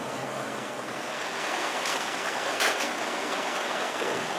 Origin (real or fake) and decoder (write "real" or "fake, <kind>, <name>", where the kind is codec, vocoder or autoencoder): fake, codec, SNAC